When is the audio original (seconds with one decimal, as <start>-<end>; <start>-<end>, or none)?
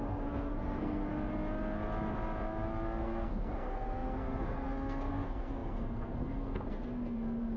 1.1-3.0